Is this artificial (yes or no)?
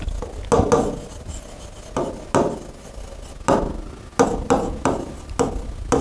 no